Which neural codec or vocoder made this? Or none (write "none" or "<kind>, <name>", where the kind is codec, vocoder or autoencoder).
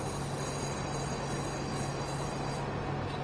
none